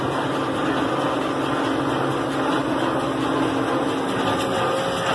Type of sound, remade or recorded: recorded